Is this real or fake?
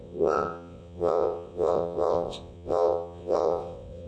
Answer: fake